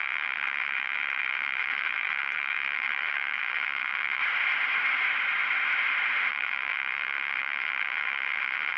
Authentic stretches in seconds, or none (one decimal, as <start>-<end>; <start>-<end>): 4.2-6.3

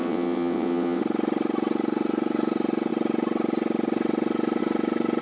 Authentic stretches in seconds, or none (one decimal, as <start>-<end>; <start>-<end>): 1.0-5.2